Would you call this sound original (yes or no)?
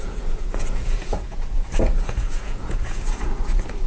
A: no